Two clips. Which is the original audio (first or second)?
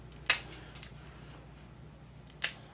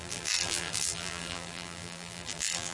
first